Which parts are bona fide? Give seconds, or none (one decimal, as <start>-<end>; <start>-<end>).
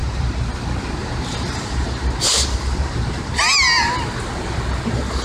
0.5-1.0; 3.3-5.2